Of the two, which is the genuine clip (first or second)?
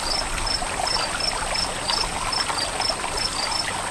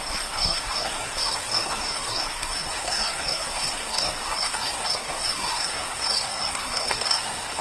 first